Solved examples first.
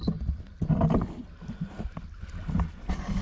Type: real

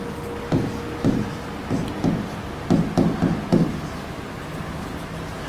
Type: real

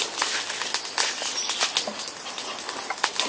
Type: real